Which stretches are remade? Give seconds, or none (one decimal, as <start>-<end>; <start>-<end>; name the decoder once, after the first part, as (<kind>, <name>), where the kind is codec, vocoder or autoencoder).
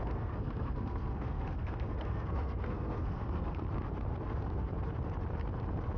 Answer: 0.0-3.6 (codec, SNAC)